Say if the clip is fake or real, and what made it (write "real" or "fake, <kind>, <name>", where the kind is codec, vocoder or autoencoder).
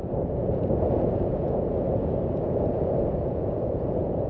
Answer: fake, vocoder, Vocos